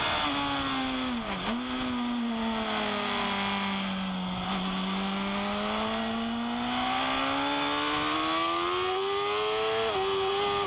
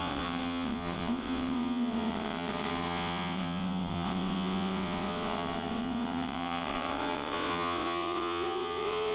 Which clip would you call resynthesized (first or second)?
second